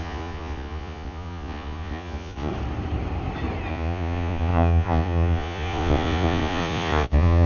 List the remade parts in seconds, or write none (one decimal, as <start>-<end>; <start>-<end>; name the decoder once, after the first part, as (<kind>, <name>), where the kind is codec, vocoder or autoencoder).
0.0-2.5 (vocoder, Vocos); 3.7-7.5